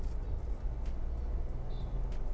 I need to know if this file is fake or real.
real